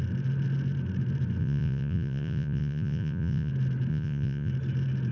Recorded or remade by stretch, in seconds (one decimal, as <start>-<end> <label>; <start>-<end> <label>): 0.0-1.4 recorded; 1.4-3.5 remade; 3.5-3.9 recorded; 3.9-4.5 remade; 4.5-5.1 recorded